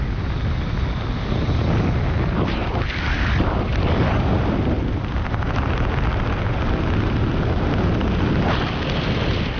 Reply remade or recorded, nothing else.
recorded